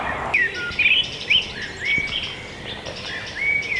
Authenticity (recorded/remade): recorded